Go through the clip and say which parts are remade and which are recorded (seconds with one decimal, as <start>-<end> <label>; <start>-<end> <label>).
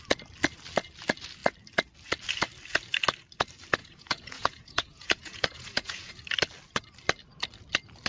0.0-3.8 recorded; 3.8-6.1 remade; 6.1-8.1 recorded